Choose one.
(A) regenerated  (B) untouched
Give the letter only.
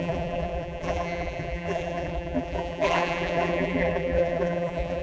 A